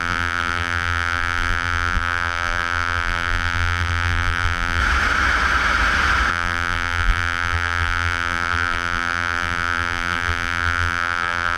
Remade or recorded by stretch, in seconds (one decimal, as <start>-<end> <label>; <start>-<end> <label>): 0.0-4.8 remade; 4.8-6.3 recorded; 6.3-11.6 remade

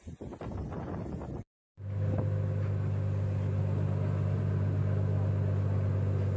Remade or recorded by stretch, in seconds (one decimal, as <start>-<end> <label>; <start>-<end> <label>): 0.0-6.4 recorded

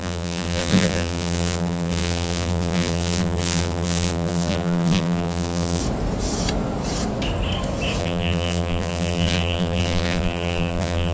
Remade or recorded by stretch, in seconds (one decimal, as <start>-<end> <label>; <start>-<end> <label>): 0.0-5.8 remade; 5.8-8.0 recorded; 8.0-11.1 remade

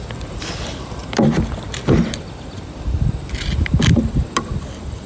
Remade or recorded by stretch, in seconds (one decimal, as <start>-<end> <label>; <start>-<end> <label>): 0.0-1.0 recorded; 1.0-1.9 remade; 1.9-5.1 recorded

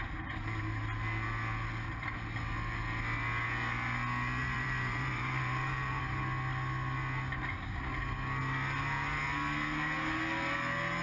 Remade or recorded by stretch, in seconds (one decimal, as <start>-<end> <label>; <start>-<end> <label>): 0.0-4.4 recorded; 4.4-6.0 remade; 6.0-11.0 recorded

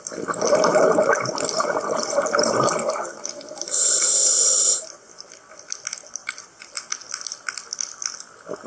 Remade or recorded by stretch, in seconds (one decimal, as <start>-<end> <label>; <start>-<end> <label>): 0.0-0.7 recorded; 0.7-5.3 remade; 5.3-6.2 recorded; 6.2-6.7 remade; 6.7-8.7 recorded